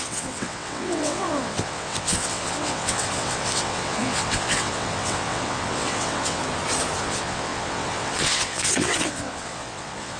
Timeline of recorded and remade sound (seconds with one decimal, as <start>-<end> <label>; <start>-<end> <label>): 0.0-6.4 remade; 6.4-7.0 recorded; 7.0-10.2 remade